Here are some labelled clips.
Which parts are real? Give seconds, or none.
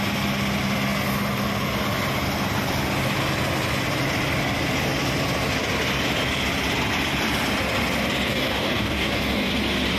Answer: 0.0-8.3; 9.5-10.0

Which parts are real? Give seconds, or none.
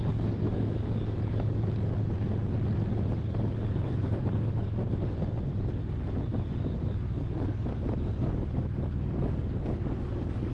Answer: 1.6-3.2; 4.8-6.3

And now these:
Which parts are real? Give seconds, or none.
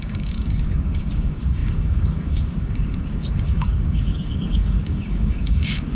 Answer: none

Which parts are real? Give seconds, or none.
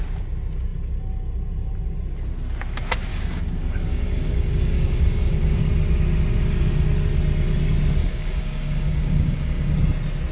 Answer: 0.0-3.1; 5.6-8.0; 9.7-10.3